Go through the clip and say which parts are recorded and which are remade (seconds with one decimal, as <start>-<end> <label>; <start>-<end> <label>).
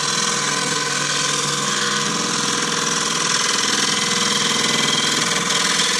0.0-0.4 recorded; 0.4-2.1 remade; 2.1-6.0 recorded